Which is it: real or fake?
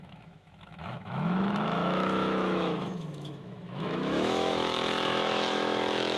fake